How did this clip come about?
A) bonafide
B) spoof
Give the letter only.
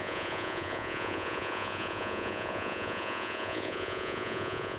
B